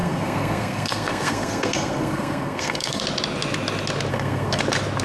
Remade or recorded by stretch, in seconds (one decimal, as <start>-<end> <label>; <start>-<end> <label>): 0.0-3.0 remade; 3.0-4.1 recorded; 4.1-4.6 remade; 4.6-5.0 recorded

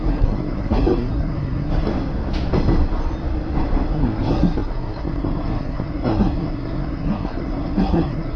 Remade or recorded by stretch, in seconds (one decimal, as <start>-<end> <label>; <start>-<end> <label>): 0.0-1.9 remade; 1.9-3.9 recorded; 3.9-8.4 remade

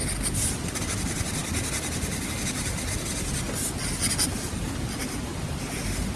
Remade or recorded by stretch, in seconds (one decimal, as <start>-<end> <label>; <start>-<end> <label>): 0.0-6.2 recorded

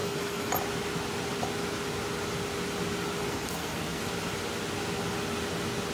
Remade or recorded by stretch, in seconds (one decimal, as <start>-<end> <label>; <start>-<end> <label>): 0.0-0.5 remade; 0.5-3.2 recorded; 3.2-4.1 remade; 4.1-5.9 recorded

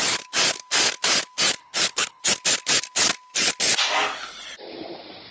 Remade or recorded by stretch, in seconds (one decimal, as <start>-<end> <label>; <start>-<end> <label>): 0.0-1.6 recorded; 1.6-2.2 remade; 2.2-5.3 recorded